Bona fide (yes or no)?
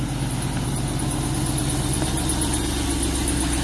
yes